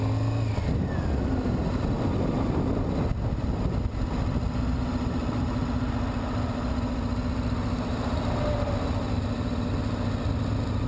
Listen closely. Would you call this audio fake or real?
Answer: real